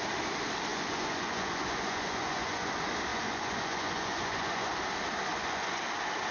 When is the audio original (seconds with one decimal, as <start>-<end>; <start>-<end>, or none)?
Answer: 0.0-0.7; 2.7-3.1; 4.7-5.3; 5.8-6.3